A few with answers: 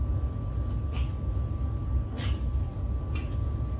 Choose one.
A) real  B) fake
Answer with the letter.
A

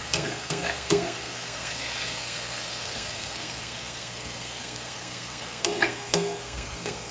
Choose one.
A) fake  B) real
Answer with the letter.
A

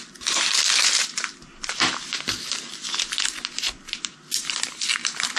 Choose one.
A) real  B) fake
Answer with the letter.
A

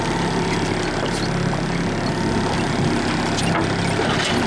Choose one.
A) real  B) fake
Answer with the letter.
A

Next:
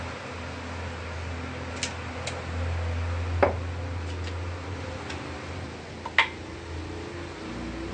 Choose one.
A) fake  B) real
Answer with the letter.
B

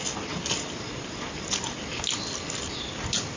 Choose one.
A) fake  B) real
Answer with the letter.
B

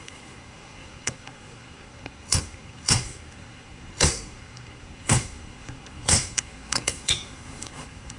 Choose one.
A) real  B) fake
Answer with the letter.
B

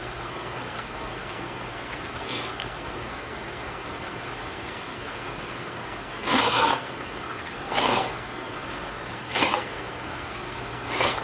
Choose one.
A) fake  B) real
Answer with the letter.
A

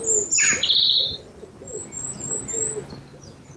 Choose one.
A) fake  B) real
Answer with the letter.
B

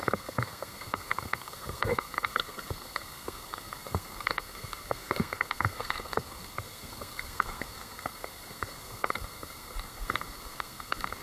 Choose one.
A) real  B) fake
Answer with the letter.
B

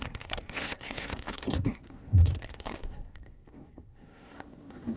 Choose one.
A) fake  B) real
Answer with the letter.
A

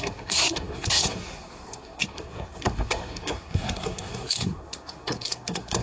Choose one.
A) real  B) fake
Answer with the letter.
B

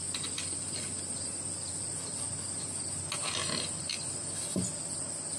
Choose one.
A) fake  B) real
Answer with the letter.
B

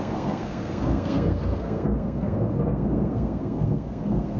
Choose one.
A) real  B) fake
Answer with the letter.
B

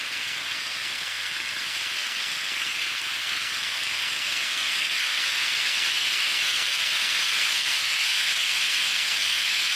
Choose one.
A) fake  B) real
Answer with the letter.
A